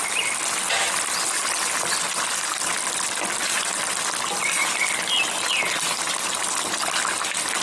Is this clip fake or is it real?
real